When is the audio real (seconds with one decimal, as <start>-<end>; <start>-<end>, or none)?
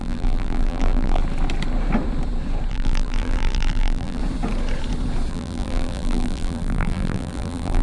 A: 1.2-2.7; 4.2-5.3